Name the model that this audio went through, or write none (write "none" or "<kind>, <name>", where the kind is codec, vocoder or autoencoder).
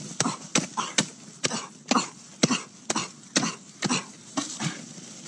none